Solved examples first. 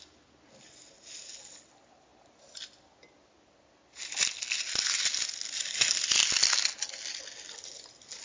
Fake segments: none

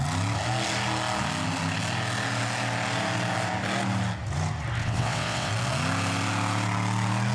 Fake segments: 4.8-5.5 (vocoder, WaveNeXt)

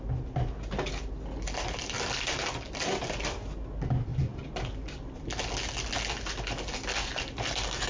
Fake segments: none

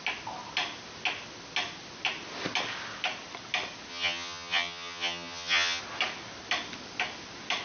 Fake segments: 3.9-5.8 (vocoder, HiFi-GAN)